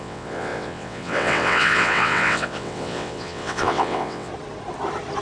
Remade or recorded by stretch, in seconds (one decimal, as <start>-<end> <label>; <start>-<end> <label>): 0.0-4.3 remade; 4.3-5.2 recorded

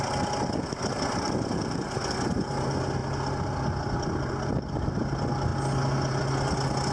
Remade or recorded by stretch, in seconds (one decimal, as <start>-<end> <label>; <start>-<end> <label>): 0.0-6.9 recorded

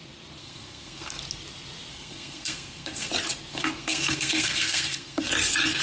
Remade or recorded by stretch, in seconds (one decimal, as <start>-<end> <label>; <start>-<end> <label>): 0.0-0.4 recorded; 0.4-1.2 remade; 1.2-1.9 recorded; 1.9-3.1 remade; 3.1-3.5 recorded; 3.5-5.3 remade; 5.3-5.8 recorded

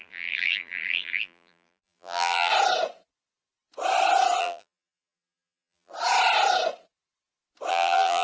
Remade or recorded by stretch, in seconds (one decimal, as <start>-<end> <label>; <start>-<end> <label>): 0.0-2.5 remade; 2.5-4.4 recorded; 4.4-5.9 remade; 5.9-7.7 recorded; 7.7-8.2 remade

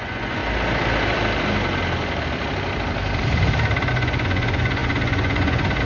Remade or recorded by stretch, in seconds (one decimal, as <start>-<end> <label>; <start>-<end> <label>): 0.0-0.4 remade; 0.4-3.9 recorded; 3.9-5.8 remade